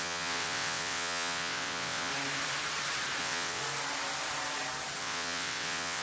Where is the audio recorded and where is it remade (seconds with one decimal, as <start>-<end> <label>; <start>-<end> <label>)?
0.0-2.1 remade; 2.1-3.2 recorded; 3.2-3.6 remade; 3.6-5.0 recorded; 5.0-6.0 remade